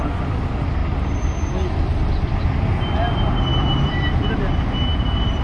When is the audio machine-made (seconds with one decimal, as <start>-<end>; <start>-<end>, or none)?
3.5-4.4; 4.9-5.4

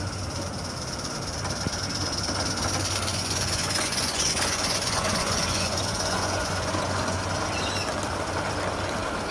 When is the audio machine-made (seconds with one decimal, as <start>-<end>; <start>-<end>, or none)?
3.1-7.2

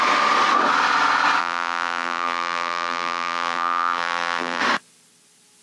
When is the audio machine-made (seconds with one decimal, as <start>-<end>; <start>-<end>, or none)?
1.4-4.6